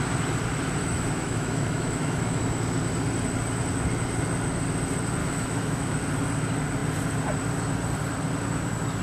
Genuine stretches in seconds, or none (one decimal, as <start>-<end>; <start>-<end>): 0.0-0.8; 2.4-5.2; 6.0-9.0